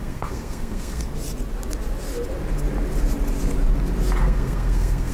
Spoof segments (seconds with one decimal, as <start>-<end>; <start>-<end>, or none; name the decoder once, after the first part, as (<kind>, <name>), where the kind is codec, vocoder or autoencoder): 0.0-1.1 (codec, SNAC); 4.2-5.1